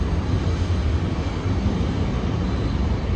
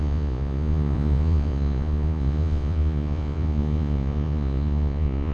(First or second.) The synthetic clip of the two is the second